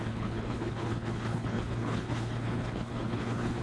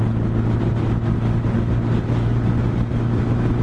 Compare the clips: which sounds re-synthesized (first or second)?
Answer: first